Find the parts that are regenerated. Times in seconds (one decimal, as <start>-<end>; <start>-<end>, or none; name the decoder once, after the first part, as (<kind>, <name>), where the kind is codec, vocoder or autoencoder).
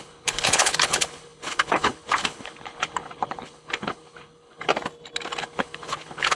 0.0-4.7 (codec, HILCodec); 5.4-6.4